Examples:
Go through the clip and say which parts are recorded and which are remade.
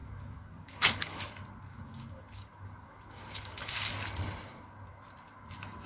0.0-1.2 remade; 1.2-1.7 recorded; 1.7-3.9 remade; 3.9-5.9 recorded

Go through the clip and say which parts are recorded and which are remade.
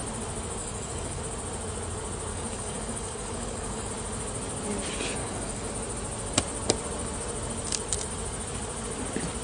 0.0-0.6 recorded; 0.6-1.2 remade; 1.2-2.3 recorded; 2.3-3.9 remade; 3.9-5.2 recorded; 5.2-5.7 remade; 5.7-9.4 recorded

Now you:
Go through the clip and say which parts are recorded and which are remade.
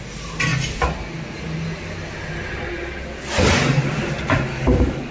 0.0-4.5 recorded; 4.5-5.1 remade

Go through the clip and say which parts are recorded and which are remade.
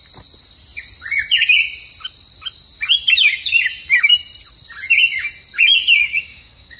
0.0-6.0 recorded; 6.0-6.8 remade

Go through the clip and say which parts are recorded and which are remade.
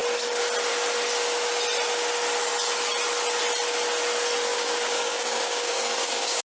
0.0-4.5 recorded; 4.5-6.4 remade